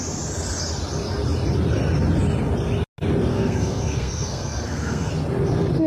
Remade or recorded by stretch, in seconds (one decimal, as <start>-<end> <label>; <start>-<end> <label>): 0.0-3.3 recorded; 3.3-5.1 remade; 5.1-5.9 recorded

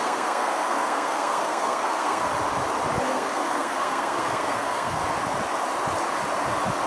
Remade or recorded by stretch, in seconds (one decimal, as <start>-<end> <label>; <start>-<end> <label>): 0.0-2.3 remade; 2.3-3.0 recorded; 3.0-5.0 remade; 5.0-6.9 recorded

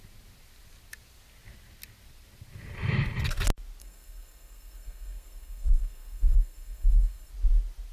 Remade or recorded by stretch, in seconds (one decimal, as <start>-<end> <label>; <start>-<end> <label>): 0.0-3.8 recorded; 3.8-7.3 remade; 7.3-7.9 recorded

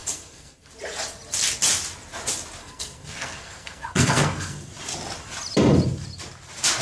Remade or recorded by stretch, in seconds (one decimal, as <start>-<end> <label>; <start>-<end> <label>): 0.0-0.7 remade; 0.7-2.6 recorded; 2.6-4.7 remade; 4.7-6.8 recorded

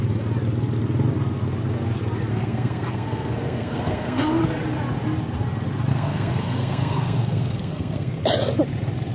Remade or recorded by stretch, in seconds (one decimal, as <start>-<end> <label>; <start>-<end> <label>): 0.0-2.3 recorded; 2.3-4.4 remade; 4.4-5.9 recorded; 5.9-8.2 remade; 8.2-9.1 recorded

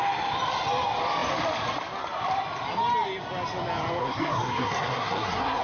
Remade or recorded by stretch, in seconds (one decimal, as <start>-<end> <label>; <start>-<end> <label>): 0.0-4.0 recorded; 4.0-5.6 remade

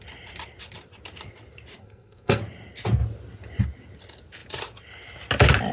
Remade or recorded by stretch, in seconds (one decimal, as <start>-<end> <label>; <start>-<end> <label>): 0.0-1.8 recorded; 1.8-2.4 remade; 2.4-5.7 recorded